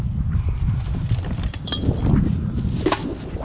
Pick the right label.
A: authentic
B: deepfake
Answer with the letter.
A